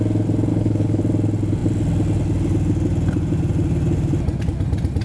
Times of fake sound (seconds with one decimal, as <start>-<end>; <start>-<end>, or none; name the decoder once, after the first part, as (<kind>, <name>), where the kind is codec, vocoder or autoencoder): 0.5-1.0 (codec, HILCodec)